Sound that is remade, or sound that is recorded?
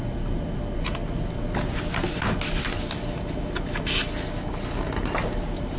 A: recorded